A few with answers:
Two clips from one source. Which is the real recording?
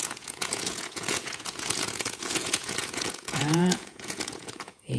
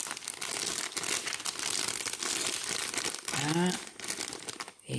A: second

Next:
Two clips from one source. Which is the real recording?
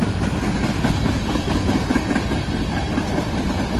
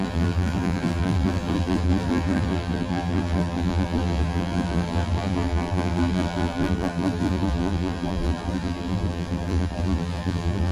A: first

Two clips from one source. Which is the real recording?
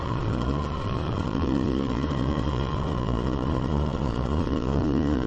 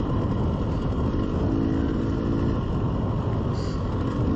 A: second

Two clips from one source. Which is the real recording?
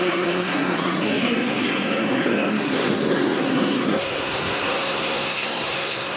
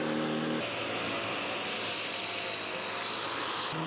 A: second